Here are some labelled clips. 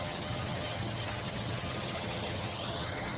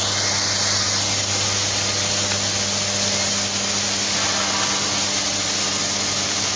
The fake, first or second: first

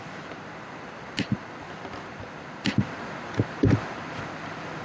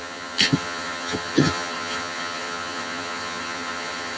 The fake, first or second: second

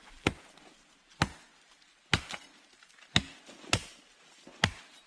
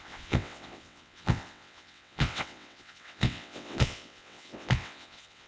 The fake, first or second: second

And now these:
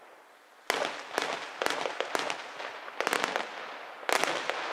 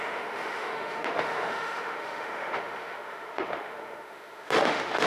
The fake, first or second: second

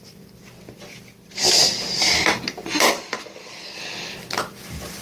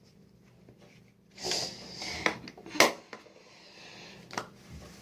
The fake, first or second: first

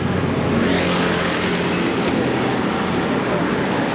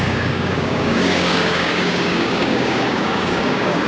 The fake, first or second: second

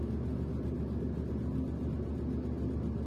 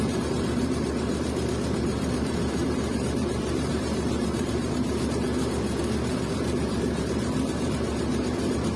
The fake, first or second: second